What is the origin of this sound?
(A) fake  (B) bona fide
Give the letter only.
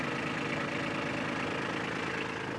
B